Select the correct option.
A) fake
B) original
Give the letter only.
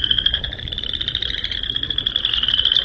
A